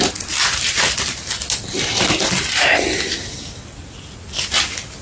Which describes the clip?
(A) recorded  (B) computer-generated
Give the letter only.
A